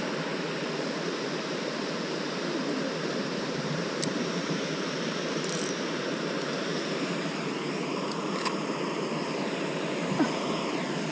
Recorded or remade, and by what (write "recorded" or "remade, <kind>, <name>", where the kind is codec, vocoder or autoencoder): remade, vocoder, BigVGAN v2